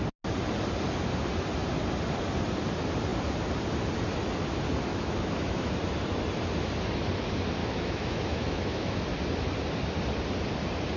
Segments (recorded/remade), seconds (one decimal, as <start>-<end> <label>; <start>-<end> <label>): 0.0-4.9 recorded; 4.9-5.7 remade; 5.7-7.6 recorded; 7.6-9.0 remade; 9.0-11.0 recorded